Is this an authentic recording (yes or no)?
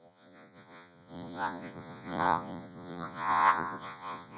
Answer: no